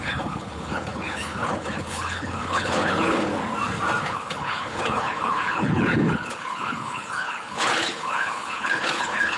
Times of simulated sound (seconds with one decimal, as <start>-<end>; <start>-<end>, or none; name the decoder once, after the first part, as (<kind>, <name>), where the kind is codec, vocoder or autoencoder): 0.0-3.3 (codec, HILCodec); 4.0-9.4